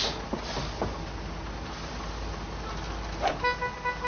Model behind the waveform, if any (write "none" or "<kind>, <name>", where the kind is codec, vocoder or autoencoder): none